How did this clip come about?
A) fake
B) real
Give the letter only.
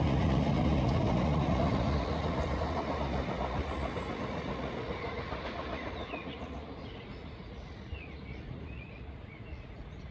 A